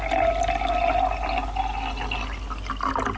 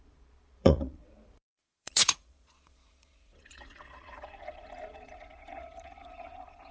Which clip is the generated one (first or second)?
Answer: second